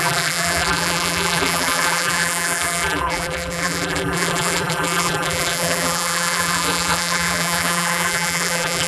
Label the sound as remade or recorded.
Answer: remade